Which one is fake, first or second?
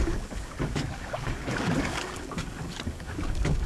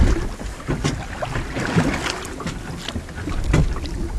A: first